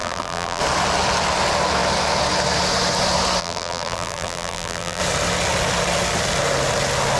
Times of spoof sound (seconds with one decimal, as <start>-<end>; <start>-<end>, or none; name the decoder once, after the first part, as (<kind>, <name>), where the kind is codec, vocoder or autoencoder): 0.0-0.6 (vocoder, BigVGAN v2); 3.4-5.0